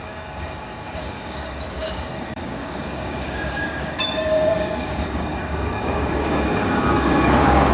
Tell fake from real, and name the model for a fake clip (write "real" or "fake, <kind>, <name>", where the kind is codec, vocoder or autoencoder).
fake, codec, DAC